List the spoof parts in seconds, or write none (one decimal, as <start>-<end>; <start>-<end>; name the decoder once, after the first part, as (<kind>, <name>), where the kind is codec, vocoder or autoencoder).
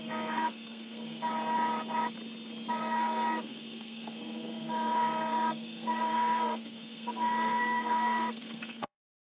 0.0-1.2 (codec, SNAC); 2.7-9.3